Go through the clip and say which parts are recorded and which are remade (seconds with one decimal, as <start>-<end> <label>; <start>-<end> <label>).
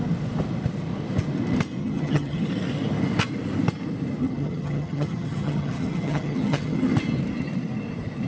0.0-1.8 recorded; 1.8-2.5 remade; 2.5-4.2 recorded; 4.2-6.9 remade; 6.9-8.3 recorded